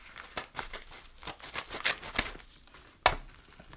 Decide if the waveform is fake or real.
real